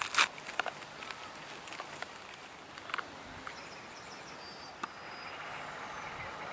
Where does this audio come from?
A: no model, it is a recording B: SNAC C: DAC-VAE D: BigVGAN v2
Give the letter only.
A